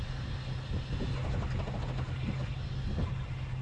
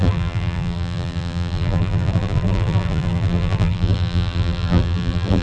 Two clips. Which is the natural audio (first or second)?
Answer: first